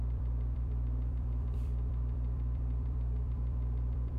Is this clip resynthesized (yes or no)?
yes